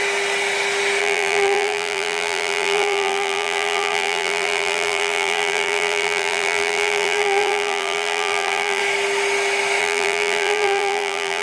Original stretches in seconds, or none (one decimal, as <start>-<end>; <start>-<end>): 0.0-1.0; 8.8-9.8